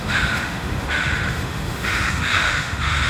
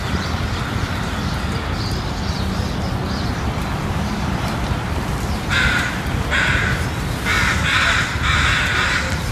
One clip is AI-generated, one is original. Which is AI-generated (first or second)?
first